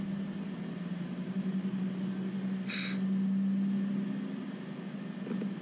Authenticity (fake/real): real